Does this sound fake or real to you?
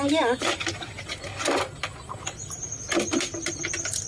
real